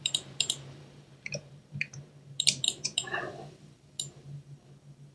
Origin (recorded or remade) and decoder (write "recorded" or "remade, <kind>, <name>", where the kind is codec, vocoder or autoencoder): remade, vocoder, BigVGAN v2